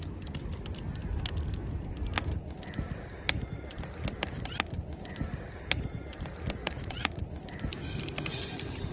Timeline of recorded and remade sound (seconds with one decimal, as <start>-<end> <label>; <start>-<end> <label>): 0.0-6.6 recorded; 6.6-7.2 remade; 7.2-8.9 recorded